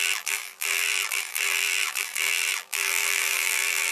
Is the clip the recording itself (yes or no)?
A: no